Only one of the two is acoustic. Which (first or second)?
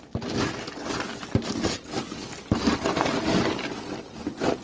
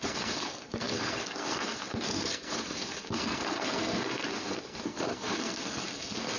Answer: first